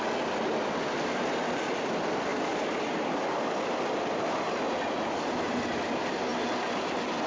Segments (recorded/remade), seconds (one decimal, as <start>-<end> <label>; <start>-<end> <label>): 0.0-7.3 recorded